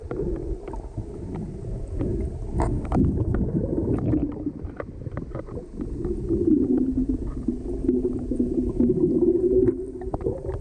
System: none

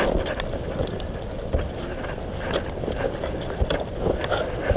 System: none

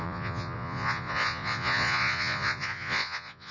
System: vocoder, Vocos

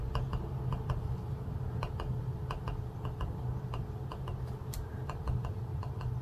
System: none